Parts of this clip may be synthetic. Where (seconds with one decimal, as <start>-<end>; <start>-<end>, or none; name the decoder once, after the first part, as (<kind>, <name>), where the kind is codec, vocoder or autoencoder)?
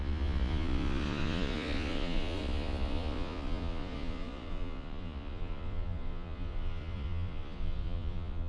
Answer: 0.0-8.5 (vocoder, Vocos)